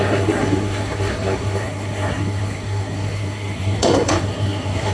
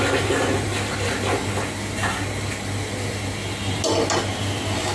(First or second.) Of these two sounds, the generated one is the first